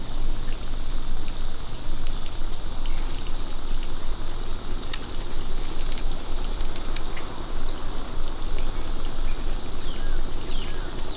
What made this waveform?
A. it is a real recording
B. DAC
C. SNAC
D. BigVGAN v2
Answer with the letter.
A